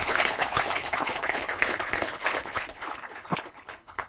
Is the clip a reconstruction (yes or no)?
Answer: yes